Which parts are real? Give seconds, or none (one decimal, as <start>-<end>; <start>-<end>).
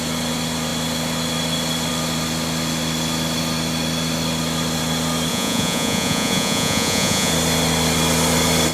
0.0-5.3; 7.3-8.7